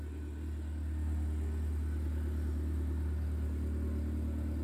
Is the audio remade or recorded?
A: recorded